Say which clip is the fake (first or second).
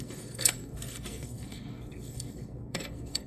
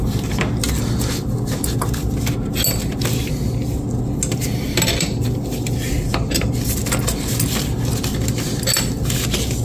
first